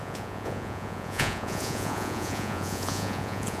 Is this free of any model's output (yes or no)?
no